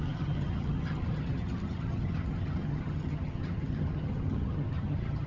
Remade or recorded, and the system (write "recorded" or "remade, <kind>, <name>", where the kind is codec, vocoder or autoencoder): remade, vocoder, HiFi-GAN